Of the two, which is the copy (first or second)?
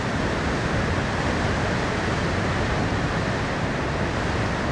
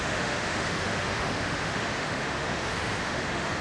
second